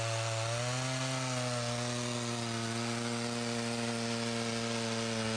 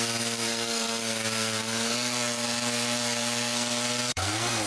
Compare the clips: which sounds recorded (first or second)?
first